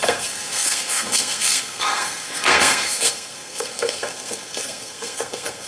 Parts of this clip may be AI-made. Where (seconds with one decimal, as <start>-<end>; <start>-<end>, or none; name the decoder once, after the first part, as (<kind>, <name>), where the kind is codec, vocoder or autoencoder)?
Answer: 0.0-5.7 (codec, SNAC)